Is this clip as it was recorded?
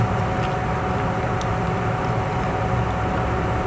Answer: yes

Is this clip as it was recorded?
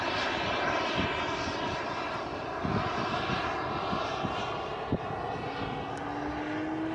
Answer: yes